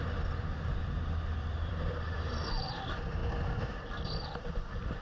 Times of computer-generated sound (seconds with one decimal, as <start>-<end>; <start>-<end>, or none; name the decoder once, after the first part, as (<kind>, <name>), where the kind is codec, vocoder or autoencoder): 0.0-3.2 (vocoder, BigVGAN v2); 3.8-5.0